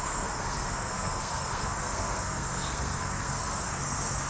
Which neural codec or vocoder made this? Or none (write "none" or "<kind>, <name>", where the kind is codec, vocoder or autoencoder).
codec, SNAC